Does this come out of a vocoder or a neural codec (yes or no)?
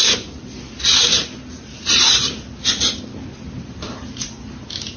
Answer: no